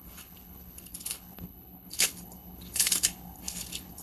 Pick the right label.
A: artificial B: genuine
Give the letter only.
A